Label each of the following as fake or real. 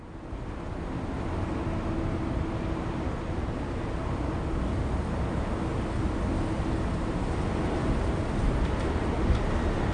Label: real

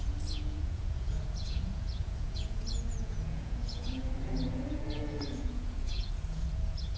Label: fake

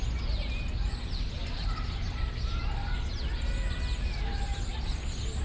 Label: real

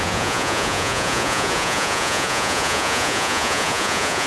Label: fake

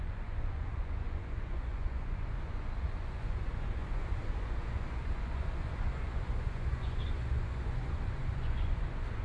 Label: fake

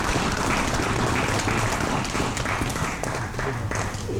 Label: real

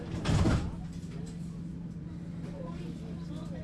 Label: real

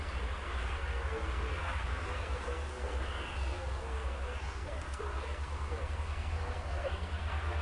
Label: fake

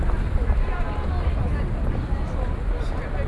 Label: real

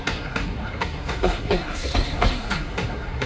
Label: fake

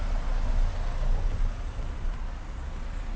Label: real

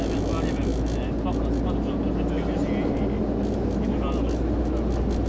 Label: real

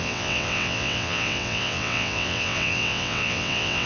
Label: fake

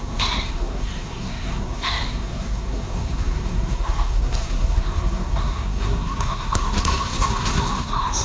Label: fake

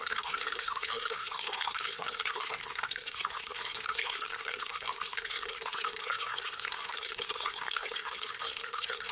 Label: fake